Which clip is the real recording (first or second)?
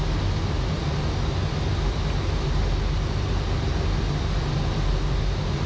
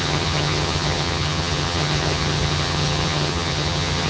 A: first